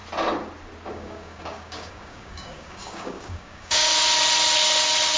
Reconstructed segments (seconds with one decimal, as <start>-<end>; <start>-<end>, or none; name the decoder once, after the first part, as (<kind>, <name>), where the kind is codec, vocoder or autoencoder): 0.9-3.9 (codec, DAC)